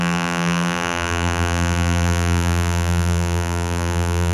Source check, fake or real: fake